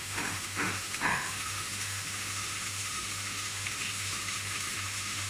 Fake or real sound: fake